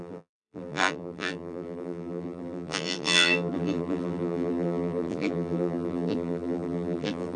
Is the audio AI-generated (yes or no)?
yes